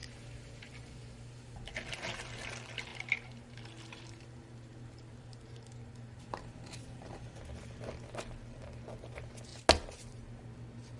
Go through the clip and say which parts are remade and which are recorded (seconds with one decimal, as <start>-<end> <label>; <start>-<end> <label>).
0.0-1.7 remade; 1.7-2.9 recorded; 2.9-7.4 remade; 7.4-11.0 recorded